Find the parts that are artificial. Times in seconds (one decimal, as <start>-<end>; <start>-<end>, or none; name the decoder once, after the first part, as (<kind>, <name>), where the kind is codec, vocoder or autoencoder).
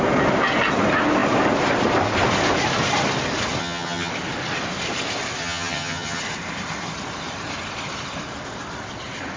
3.6-4.1 (vocoder, HiFi-GAN); 5.4-6.2